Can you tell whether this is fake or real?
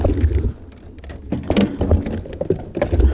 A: real